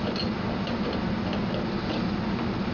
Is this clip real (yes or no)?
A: yes